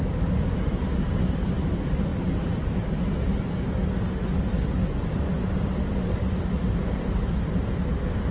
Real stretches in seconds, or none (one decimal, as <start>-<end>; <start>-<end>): 0.0-8.3